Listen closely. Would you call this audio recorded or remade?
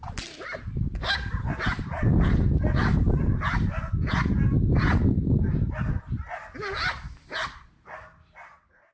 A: recorded